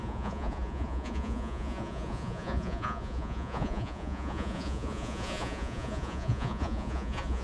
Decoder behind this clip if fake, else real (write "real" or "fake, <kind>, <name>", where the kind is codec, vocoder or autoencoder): fake, vocoder, Vocos